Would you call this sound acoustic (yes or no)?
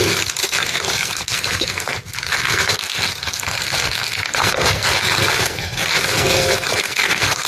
no